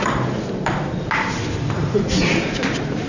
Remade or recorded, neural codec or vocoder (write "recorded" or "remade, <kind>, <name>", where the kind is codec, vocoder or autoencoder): recorded